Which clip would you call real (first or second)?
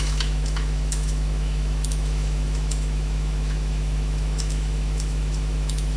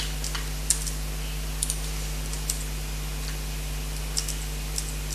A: second